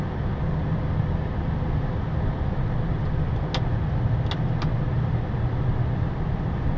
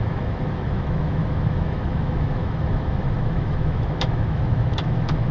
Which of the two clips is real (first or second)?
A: first